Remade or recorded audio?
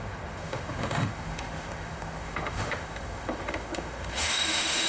remade